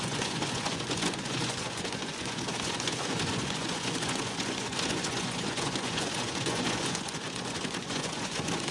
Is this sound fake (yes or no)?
yes